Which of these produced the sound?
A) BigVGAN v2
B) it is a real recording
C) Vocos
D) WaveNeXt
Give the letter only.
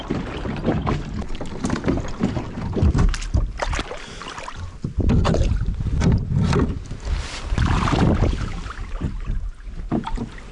B